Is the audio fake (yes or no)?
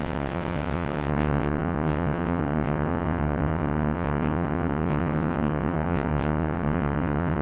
yes